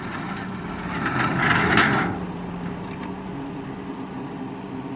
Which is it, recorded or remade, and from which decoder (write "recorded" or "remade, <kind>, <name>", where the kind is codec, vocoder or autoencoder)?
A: recorded